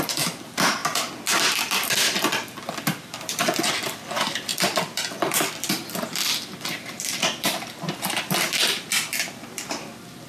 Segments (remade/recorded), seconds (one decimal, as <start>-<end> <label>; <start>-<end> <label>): 0.0-0.8 remade; 0.8-1.6 recorded; 1.6-10.3 remade